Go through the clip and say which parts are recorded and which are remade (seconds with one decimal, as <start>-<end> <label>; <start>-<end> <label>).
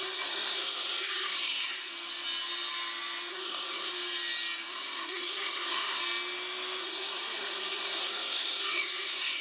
0.0-1.9 remade; 1.9-3.3 recorded; 3.3-3.9 remade; 3.9-4.7 recorded; 4.7-6.0 remade; 6.0-6.8 recorded; 6.8-9.4 remade